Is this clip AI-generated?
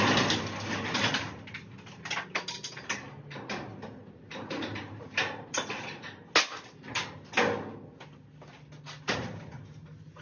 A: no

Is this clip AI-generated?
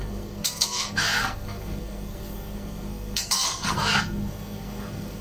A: yes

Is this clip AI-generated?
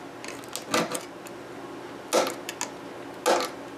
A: no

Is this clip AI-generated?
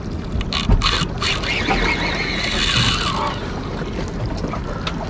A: no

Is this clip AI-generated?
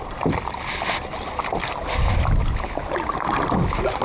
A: no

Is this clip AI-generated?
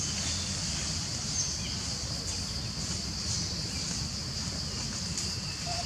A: no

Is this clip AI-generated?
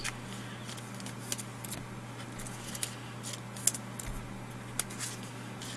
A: no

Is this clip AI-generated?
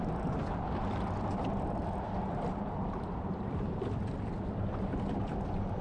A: yes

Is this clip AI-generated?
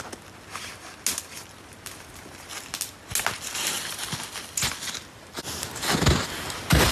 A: no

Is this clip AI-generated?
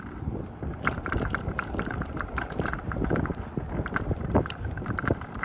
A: yes